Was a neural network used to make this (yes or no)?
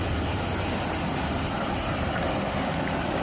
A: no